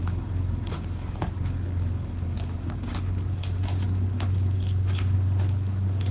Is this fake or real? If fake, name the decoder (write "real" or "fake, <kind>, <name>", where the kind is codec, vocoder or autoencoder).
fake, codec, DAC